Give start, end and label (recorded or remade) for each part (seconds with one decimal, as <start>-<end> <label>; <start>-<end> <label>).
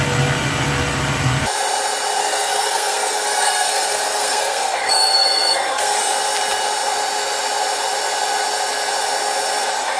0.0-2.2 recorded; 2.2-6.0 remade; 6.0-10.0 recorded